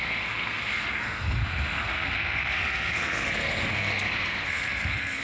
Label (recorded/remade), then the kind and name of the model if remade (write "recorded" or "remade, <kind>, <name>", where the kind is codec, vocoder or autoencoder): remade, codec, SNAC